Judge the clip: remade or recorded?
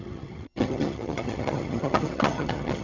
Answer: remade